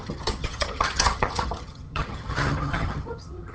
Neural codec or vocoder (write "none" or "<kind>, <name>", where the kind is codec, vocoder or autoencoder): vocoder, HiFi-GAN